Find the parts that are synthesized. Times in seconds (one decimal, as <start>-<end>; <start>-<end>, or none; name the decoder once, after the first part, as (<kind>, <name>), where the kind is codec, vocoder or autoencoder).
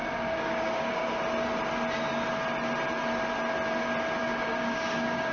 0.0-1.0 (codec, DAC); 4.2-5.3